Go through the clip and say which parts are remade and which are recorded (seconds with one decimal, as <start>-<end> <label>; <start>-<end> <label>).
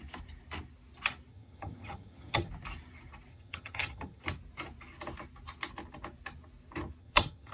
0.0-1.3 recorded; 1.3-2.5 remade; 2.5-3.3 recorded; 3.3-4.2 remade; 4.2-7.0 recorded; 7.0-7.5 remade